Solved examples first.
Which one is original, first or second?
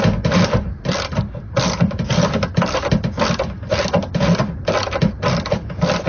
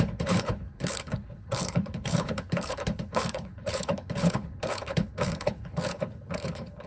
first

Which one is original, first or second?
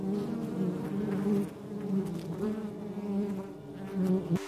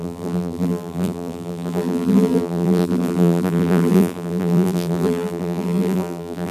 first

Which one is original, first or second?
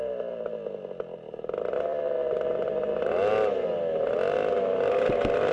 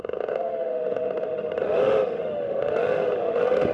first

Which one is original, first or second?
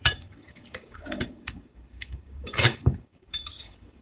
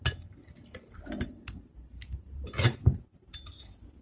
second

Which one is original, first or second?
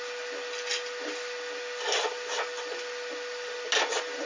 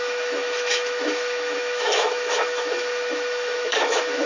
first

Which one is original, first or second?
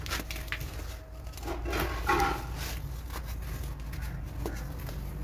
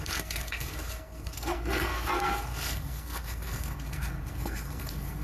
first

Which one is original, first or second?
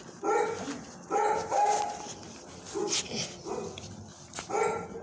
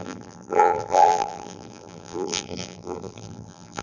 first